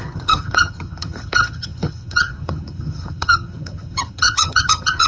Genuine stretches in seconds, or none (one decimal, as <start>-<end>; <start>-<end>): none